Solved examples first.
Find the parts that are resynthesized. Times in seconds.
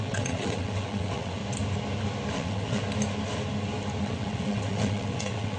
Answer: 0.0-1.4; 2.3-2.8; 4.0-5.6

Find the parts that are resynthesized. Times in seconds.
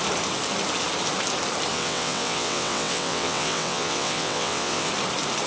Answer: 1.7-4.9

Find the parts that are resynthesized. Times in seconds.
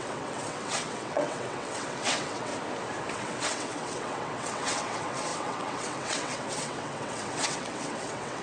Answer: 0.0-2.5; 3.1-8.4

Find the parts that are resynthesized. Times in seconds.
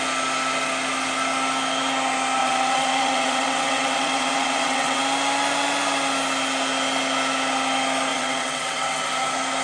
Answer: 2.4-5.0; 8.1-9.0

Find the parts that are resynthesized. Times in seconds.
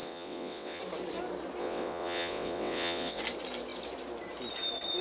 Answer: 0.0-0.8; 1.6-3.2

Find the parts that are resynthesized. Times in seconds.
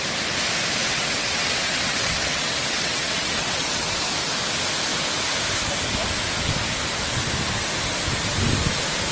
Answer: 0.8-4.0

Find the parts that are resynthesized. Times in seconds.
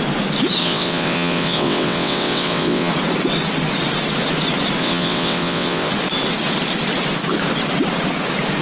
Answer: 0.6-2.9; 4.8-5.9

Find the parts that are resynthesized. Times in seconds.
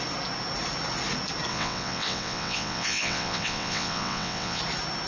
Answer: 1.5-4.6